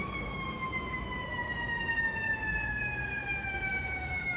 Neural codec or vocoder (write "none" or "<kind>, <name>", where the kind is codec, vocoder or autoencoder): autoencoder, DAC-VAE